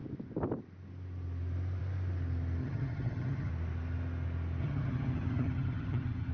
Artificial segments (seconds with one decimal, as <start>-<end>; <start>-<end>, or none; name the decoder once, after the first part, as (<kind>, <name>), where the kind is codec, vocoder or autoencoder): 2.6-3.5 (vocoder, HiFi-GAN); 4.6-6.3